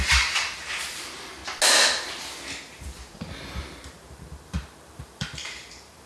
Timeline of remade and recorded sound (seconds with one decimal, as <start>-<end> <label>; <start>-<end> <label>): 0.0-1.4 remade; 1.4-3.6 recorded; 3.6-6.1 remade